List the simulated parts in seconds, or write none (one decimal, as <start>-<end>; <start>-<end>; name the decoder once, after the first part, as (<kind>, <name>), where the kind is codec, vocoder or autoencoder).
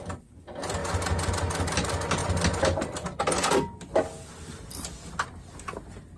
none